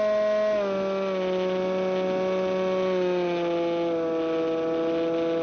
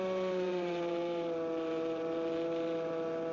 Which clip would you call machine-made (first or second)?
second